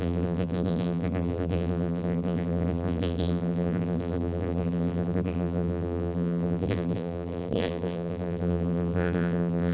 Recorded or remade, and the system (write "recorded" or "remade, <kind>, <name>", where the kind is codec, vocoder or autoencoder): remade, vocoder, BigVGAN v2